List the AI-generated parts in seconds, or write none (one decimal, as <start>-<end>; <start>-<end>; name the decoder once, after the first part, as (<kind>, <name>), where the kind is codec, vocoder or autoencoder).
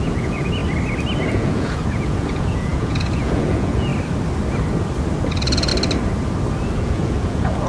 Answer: 0.0-0.6 (vocoder, Vocos); 1.3-3.9; 5.2-5.7; 6.8-7.7